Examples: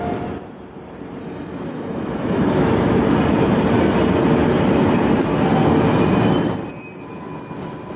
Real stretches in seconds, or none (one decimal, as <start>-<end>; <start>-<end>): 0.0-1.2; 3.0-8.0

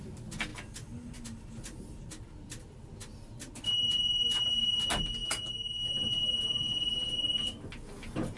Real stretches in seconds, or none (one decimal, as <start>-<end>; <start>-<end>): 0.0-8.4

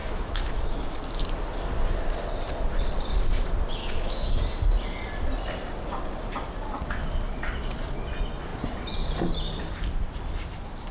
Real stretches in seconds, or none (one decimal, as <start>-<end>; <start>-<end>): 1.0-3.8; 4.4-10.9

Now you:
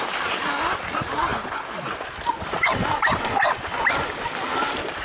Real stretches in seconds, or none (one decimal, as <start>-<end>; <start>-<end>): 0.0-5.0